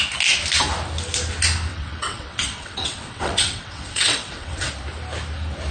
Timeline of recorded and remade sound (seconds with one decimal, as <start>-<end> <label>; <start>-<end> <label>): 0.0-1.7 recorded; 1.7-4.7 remade; 4.7-5.7 recorded